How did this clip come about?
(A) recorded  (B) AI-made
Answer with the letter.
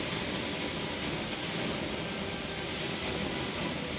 A